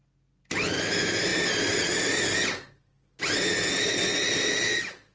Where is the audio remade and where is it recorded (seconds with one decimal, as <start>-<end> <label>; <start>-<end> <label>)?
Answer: 0.0-5.1 recorded